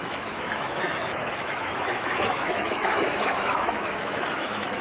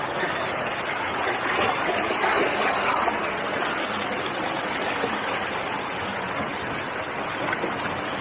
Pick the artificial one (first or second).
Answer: first